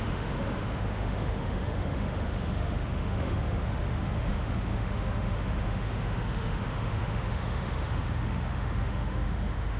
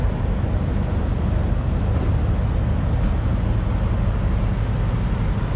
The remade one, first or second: first